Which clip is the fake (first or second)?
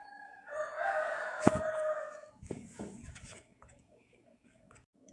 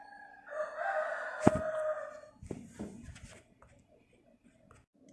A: first